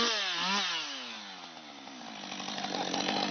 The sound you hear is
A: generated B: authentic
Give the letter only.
B